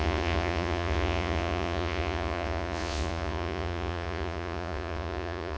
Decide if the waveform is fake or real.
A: fake